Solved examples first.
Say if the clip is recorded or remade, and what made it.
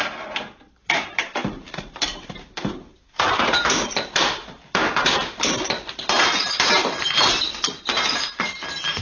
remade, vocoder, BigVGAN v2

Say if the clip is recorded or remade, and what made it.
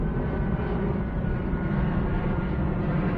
recorded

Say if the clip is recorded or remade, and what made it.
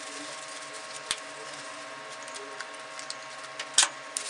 recorded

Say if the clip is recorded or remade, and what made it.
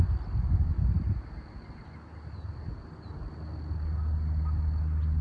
recorded